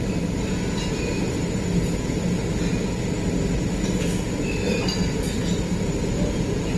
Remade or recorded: recorded